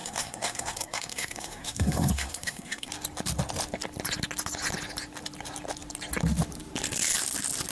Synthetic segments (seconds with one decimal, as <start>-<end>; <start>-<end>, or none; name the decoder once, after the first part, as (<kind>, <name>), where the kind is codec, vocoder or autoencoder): 0.0-2.9 (codec, SNAC)